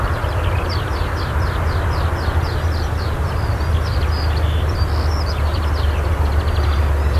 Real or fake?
real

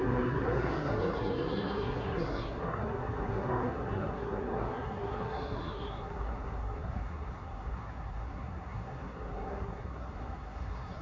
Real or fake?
fake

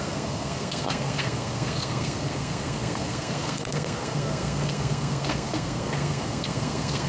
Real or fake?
fake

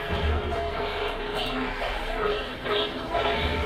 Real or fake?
fake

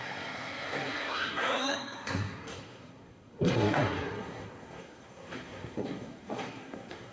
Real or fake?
fake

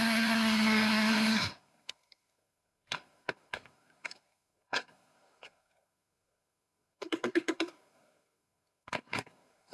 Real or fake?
fake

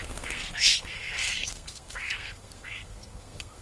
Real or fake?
fake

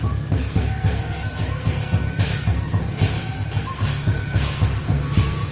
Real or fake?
fake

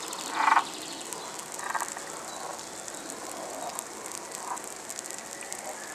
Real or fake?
real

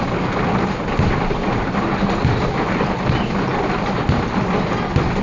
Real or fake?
real